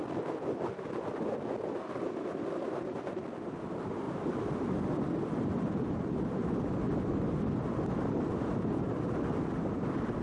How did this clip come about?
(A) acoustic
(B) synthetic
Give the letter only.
A